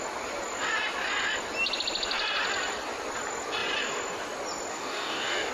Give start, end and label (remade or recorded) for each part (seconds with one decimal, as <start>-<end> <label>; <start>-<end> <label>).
0.0-4.7 recorded; 4.7-5.5 remade